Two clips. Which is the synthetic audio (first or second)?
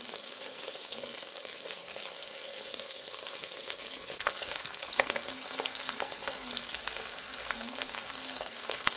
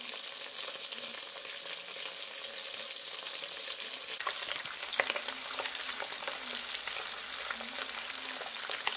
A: first